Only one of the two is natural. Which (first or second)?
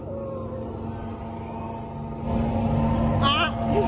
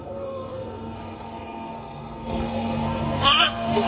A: first